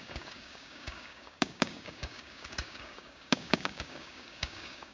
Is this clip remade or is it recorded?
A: remade